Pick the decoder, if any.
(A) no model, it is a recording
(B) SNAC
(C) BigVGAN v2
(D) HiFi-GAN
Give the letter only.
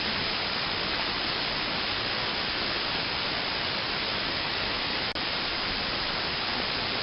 A